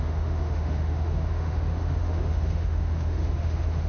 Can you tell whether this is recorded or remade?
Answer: remade